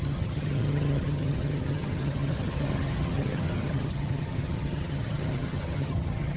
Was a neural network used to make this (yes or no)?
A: yes